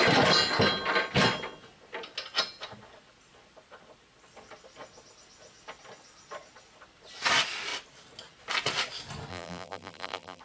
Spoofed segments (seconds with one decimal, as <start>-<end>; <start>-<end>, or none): 9.3-10.4